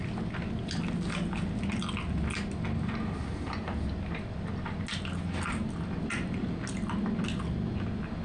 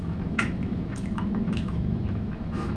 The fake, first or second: second